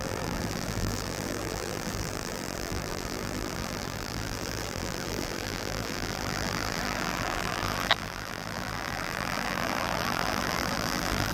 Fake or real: fake